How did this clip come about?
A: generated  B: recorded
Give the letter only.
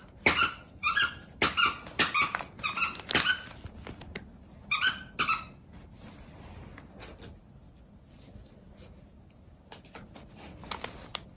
B